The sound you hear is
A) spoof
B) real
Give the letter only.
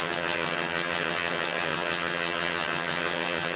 A